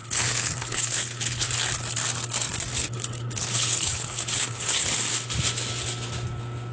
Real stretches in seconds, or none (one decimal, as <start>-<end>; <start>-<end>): 1.5-2.7; 4.9-6.7